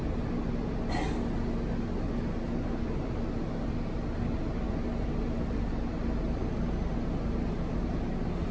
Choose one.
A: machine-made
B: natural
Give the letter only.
B